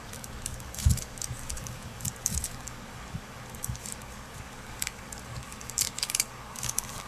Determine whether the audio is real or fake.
fake